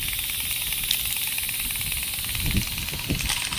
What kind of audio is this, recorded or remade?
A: recorded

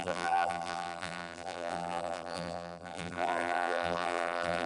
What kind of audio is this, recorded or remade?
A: remade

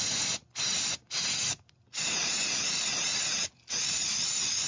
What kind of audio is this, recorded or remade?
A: recorded